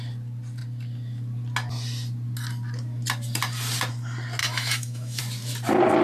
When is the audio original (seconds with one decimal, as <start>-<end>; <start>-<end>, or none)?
0.0-4.4; 5.2-6.0